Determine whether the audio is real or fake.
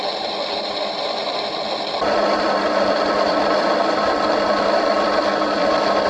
fake